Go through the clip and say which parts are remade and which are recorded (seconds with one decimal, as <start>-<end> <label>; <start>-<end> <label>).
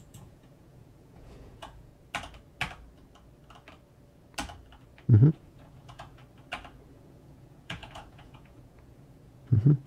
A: 0.0-1.9 remade; 1.9-5.3 recorded; 5.3-6.2 remade; 6.2-6.9 recorded; 6.9-9.9 remade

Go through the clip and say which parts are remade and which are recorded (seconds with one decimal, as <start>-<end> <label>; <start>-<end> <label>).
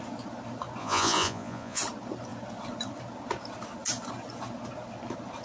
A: 0.0-0.8 recorded; 0.8-1.8 remade; 1.8-5.4 recorded